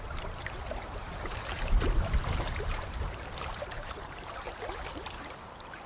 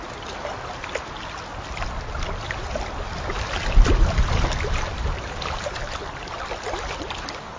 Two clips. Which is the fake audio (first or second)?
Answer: first